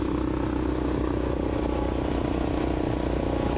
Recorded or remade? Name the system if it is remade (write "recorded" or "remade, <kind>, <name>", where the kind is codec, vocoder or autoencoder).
recorded